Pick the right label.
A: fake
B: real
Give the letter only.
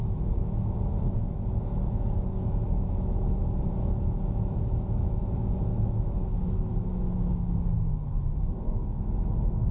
A